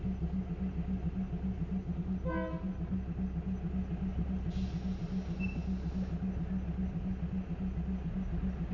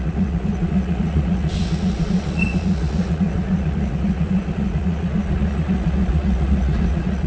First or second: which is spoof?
second